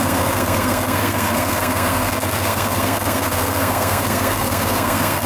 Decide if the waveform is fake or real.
fake